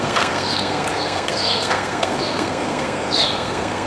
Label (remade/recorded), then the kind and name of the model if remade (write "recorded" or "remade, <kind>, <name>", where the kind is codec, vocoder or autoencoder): remade, codec, SNAC